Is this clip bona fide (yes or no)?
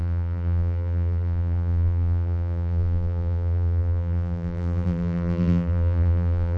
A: no